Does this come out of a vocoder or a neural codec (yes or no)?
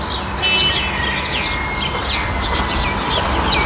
no